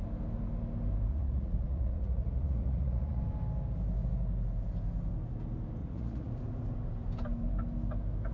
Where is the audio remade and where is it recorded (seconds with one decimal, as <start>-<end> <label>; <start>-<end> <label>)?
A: 0.0-1.1 recorded; 1.1-3.2 remade; 3.2-5.8 recorded; 5.8-6.3 remade; 6.3-8.3 recorded